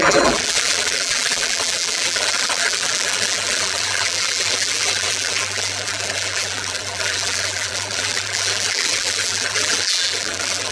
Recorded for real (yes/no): no